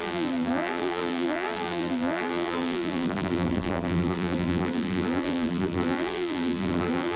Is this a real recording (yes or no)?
no